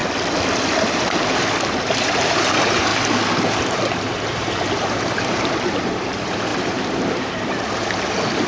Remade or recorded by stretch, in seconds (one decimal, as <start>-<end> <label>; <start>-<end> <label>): 0.0-1.9 recorded; 1.9-2.9 remade; 2.9-3.5 recorded; 3.5-8.5 remade